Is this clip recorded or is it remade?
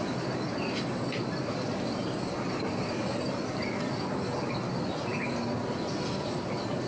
recorded